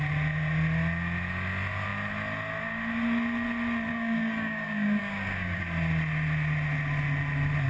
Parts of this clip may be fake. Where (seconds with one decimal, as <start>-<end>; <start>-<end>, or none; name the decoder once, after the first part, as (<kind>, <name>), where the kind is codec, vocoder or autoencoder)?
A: 3.9-5.6 (codec, DAC)